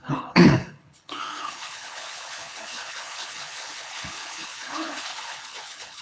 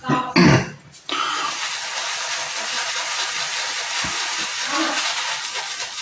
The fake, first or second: first